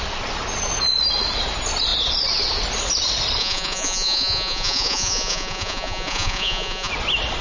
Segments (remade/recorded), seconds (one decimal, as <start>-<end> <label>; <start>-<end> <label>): 0.0-3.4 recorded; 3.4-6.9 remade; 6.9-7.4 recorded